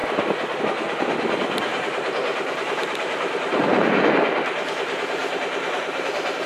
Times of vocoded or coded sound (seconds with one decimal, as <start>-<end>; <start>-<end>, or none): 1.7-3.9; 5.2-6.1